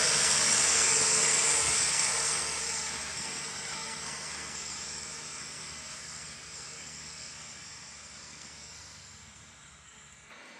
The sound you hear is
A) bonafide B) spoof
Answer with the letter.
B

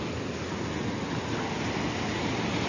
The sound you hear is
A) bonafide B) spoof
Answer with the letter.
A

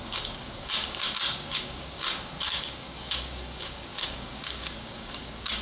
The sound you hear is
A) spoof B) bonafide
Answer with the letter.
A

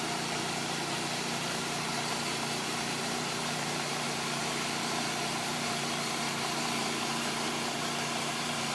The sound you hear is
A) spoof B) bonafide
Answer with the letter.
A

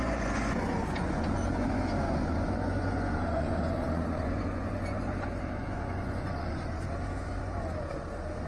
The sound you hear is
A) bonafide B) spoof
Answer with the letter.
B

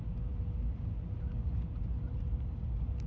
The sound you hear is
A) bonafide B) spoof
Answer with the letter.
A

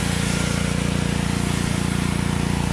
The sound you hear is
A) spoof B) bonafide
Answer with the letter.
B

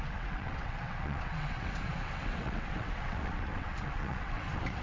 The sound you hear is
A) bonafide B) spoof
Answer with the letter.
B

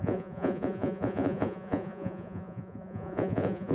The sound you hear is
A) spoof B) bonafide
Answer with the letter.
A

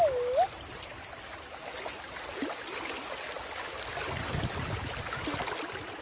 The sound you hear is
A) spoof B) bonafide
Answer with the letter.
B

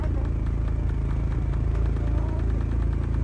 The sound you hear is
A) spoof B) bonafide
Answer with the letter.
B